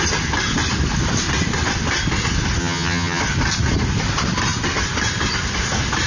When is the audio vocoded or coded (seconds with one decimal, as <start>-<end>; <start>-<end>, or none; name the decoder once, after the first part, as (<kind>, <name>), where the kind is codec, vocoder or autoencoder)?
2.6-3.2 (vocoder, HiFi-GAN)